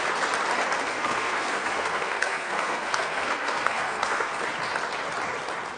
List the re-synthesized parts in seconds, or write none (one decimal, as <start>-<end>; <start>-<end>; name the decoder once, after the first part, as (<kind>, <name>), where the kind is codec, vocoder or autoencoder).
0.9-4.4 (codec, SNAC)